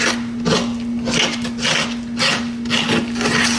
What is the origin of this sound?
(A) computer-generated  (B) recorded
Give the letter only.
B